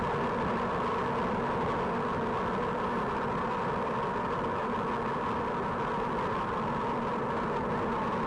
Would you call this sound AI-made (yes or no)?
no